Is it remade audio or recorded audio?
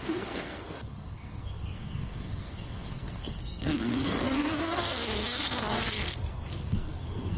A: remade